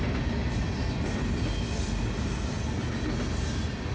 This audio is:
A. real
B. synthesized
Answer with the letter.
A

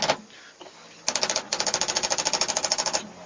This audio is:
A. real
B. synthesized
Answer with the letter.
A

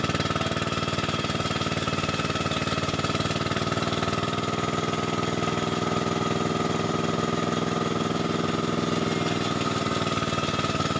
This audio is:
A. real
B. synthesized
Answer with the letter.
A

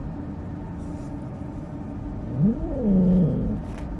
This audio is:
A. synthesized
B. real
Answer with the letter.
B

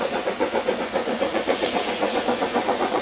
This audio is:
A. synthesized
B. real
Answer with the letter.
A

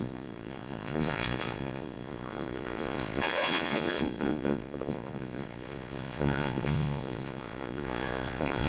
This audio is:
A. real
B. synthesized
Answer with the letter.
B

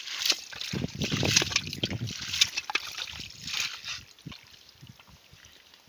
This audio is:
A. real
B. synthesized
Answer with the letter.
A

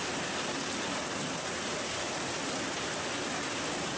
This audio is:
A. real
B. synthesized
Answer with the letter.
A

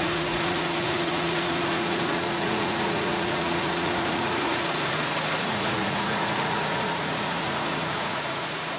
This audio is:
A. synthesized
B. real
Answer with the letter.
A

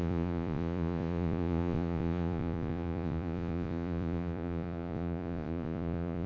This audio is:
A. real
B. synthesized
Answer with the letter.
B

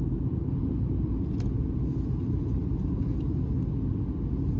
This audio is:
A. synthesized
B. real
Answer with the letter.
B